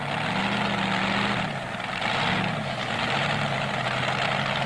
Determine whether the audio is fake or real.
real